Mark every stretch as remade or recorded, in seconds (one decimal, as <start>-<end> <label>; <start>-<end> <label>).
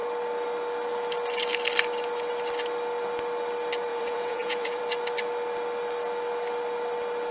0.0-3.9 recorded; 3.9-4.8 remade; 4.8-7.3 recorded